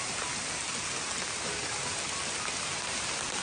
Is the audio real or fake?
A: real